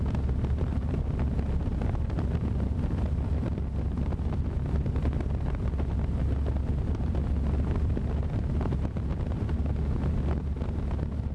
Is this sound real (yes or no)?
yes